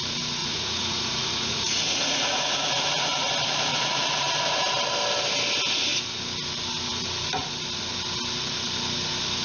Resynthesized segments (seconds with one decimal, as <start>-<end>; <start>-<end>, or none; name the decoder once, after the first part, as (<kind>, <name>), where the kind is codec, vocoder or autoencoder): 0.4-3.3 (vocoder, Vocos); 3.7-4.3